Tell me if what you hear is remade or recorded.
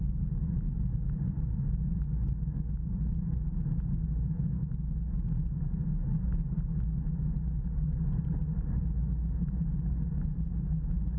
recorded